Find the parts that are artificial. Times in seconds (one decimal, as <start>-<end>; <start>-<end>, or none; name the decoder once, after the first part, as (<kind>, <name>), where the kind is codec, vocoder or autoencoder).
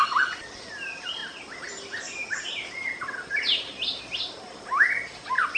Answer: none